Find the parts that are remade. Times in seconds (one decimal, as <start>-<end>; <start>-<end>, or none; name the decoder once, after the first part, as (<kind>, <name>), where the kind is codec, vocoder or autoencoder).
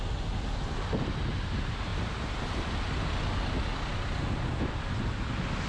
none